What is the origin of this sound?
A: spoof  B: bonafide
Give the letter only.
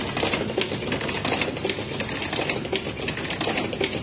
B